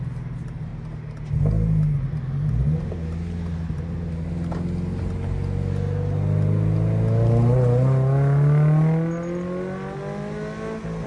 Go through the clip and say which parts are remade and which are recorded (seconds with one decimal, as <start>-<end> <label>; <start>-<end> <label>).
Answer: 0.0-11.1 recorded